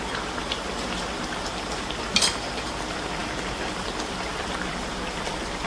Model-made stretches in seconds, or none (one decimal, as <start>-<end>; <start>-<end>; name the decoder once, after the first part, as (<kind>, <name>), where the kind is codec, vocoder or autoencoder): 0.0-5.7 (vocoder, BigVGAN v2)